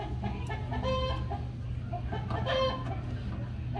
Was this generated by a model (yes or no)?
no